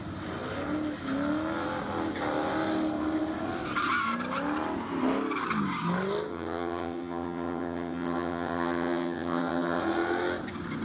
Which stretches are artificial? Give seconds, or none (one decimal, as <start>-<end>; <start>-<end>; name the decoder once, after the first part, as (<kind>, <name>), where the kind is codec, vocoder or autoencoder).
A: 6.3-9.8 (vocoder, HiFi-GAN)